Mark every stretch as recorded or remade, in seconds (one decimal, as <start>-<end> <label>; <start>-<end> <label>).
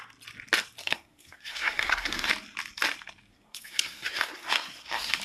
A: 0.0-0.8 recorded; 0.8-2.3 remade; 2.3-3.3 recorded; 3.3-5.2 remade